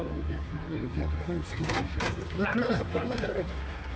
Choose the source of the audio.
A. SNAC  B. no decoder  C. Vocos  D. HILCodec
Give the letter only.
A